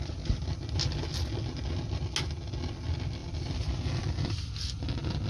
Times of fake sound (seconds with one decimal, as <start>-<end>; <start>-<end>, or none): 3.2-4.5

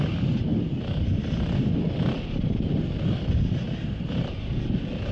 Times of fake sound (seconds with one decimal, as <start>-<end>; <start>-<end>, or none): none

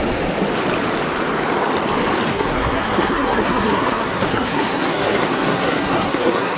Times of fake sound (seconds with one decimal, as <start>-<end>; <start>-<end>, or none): 2.3-6.6

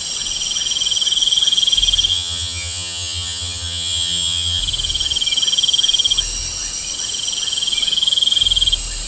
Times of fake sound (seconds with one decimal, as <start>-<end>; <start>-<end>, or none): 2.1-4.6

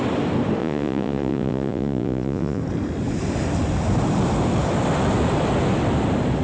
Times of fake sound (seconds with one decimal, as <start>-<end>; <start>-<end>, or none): 0.6-2.6

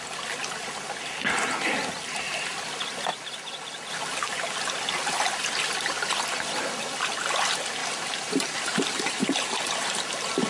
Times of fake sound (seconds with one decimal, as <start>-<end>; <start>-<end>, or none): 3.1-3.9; 7.8-9.0

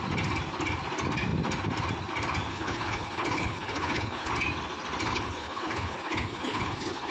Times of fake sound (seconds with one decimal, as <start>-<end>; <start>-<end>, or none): 2.5-4.3; 5.1-7.1

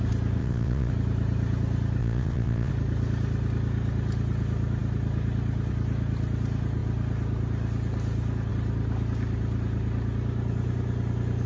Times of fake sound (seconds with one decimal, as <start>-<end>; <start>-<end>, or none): 0.4-0.9; 2.0-2.7